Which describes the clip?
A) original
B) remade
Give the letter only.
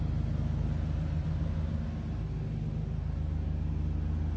A